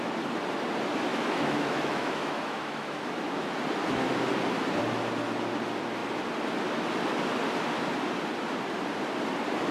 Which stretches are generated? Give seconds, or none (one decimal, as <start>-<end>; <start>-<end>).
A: 1.1-3.5